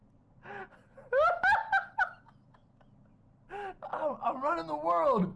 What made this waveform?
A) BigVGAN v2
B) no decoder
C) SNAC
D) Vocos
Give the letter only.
B